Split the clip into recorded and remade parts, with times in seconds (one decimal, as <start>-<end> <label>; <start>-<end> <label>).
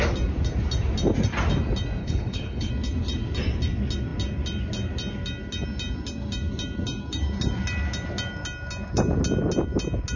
0.0-2.0 recorded; 2.0-2.7 remade; 2.7-10.2 recorded